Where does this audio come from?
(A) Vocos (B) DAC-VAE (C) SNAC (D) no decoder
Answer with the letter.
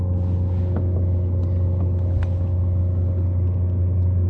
D